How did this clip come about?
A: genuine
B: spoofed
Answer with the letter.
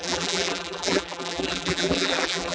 B